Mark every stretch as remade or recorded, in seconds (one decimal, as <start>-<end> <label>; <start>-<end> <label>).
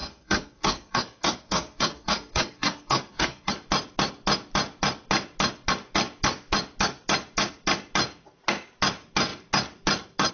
0.0-3.5 remade; 3.5-10.3 recorded